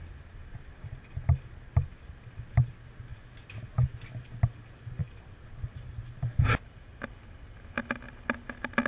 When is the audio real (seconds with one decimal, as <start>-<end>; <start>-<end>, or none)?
0.0-8.9